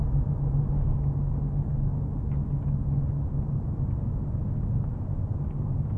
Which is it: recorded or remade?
recorded